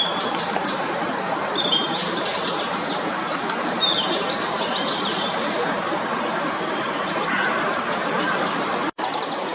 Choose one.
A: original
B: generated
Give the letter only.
B